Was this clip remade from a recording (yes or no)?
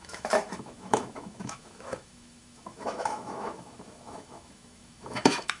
yes